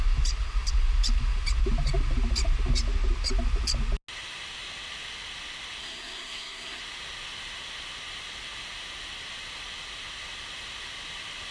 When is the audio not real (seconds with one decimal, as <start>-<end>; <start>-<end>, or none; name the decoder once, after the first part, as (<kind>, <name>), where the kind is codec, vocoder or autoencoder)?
5.8-6.8 (codec, SNAC)